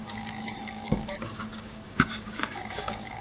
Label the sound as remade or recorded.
remade